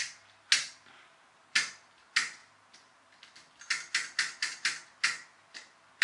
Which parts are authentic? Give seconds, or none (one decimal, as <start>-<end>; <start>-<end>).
0.0-6.0